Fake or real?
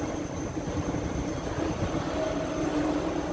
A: real